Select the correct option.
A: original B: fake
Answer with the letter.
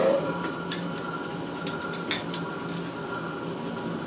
A